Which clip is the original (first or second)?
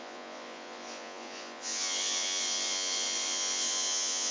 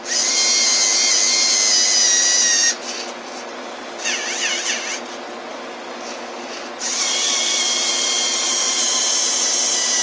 second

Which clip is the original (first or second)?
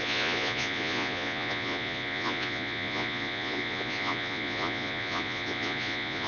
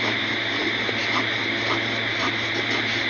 second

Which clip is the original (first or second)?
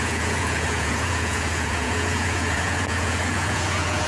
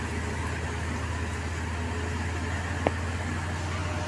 second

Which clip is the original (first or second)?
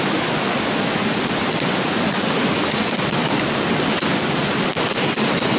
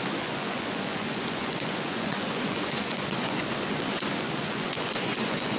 first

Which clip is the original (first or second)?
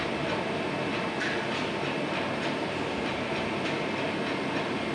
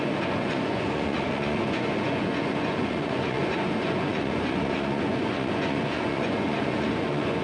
first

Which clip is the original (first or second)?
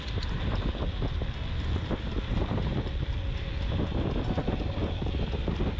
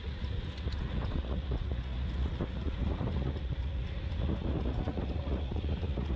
first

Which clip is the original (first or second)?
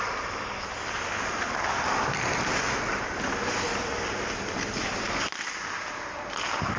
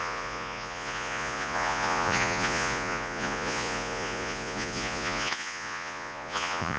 first